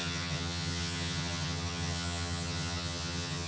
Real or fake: fake